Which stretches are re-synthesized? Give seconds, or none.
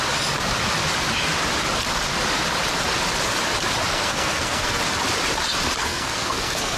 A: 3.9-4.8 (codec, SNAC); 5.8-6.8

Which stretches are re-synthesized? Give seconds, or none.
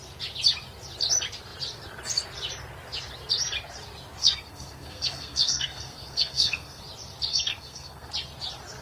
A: 4.2-6.8 (codec, SNAC); 7.3-8.1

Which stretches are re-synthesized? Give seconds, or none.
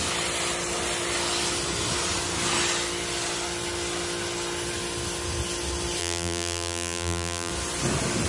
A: 6.0-7.5 (vocoder, BigVGAN v2)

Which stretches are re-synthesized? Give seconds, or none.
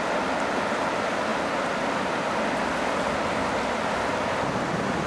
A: none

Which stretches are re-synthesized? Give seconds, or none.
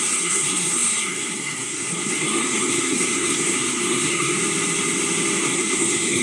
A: 0.0-4.4 (codec, SNAC); 5.4-6.2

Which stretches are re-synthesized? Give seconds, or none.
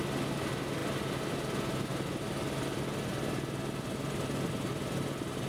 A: none